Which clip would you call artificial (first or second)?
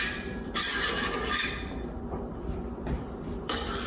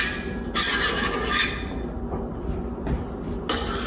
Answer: first